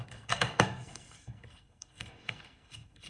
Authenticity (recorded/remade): remade